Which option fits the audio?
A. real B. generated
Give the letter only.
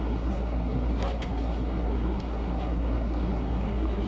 B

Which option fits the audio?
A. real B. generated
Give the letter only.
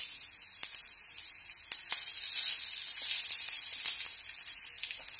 A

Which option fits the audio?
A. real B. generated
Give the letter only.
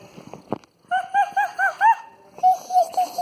A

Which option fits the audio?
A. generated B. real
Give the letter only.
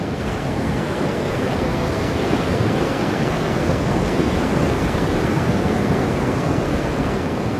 A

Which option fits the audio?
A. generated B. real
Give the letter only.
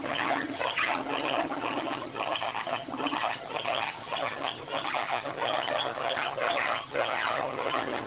A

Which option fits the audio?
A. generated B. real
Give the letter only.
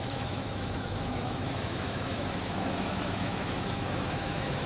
A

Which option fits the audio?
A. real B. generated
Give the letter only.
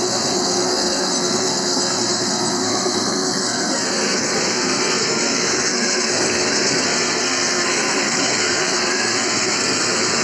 B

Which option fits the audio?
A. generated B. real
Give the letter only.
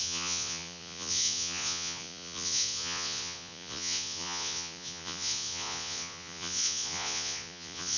A